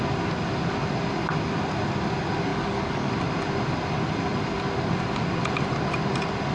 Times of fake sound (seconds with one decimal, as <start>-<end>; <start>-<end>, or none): 2.5-3.1